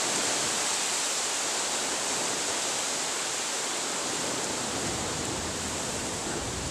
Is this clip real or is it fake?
fake